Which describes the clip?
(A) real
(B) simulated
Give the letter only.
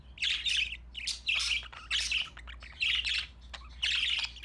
A